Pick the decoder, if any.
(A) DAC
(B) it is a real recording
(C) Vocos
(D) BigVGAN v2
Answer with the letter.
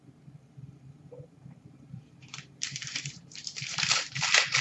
D